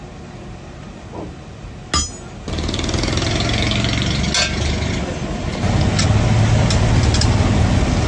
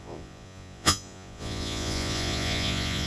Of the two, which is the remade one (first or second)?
second